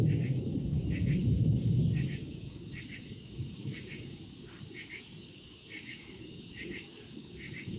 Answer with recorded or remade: remade